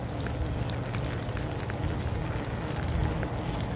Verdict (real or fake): real